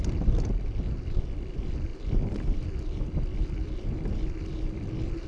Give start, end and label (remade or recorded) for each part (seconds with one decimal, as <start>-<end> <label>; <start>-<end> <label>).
0.0-5.3 recorded

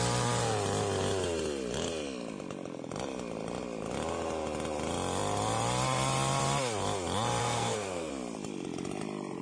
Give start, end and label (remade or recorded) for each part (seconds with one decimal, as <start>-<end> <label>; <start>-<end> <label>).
0.0-7.4 recorded; 7.4-8.1 remade; 8.1-9.4 recorded

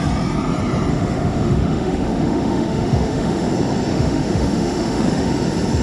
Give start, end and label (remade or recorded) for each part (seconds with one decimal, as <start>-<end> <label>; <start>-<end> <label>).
0.0-0.9 recorded; 0.9-3.5 remade; 3.5-3.9 recorded; 3.9-5.3 remade; 5.3-5.8 recorded

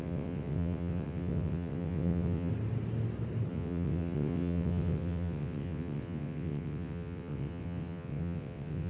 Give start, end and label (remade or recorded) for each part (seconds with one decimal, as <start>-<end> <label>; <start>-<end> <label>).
0.0-2.5 remade; 2.5-3.5 recorded; 3.5-8.9 remade

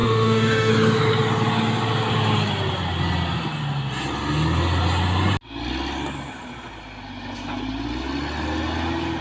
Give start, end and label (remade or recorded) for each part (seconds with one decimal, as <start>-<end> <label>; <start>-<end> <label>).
0.0-0.7 remade; 0.7-9.2 recorded

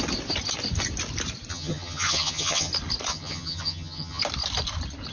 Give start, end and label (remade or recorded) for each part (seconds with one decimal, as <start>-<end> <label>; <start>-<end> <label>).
0.0-1.5 recorded; 1.5-2.7 remade; 2.7-3.1 recorded; 3.1-4.2 remade; 4.2-5.1 recorded